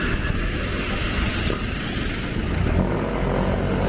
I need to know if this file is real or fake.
real